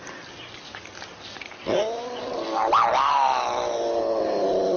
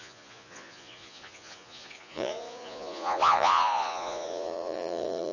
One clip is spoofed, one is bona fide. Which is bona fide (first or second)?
first